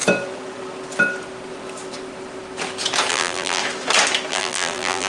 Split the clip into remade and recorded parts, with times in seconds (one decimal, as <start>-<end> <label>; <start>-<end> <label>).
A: 0.0-3.1 recorded; 3.1-3.6 remade; 3.6-4.3 recorded; 4.3-5.1 remade